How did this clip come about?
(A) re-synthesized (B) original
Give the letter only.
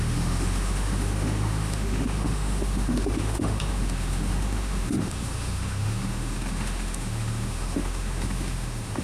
A